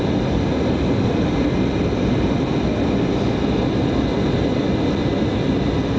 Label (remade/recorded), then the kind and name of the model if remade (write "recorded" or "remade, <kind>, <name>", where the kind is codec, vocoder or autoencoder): recorded